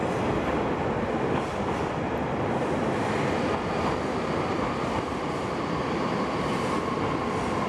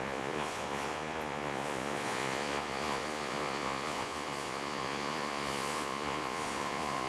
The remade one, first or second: second